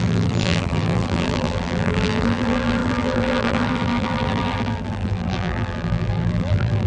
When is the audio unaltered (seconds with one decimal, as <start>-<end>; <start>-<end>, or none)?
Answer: none

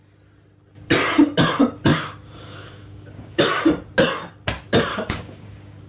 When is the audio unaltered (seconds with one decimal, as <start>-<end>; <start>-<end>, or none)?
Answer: 0.0-1.9; 3.6-4.9

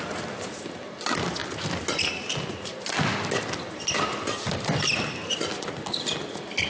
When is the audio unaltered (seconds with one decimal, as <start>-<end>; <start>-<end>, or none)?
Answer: 0.0-6.7

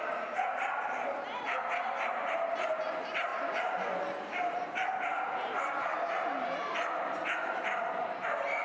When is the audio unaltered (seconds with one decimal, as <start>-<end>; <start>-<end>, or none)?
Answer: 0.0-8.6